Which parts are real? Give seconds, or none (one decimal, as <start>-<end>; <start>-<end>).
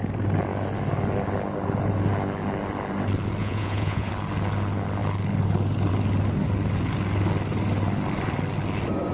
0.0-3.4; 4.1-9.1